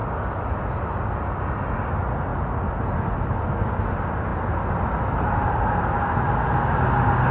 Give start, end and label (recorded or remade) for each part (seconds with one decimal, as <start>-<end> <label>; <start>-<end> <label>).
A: 0.0-7.3 recorded